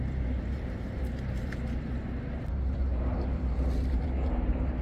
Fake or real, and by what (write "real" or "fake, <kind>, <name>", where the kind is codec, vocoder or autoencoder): fake, vocoder, BigVGAN v2